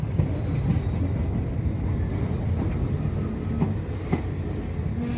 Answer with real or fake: real